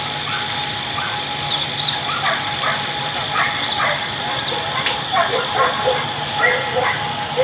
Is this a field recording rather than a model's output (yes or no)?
yes